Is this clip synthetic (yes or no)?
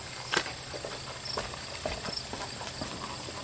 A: no